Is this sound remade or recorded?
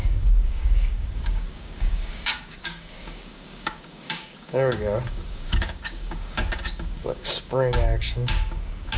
remade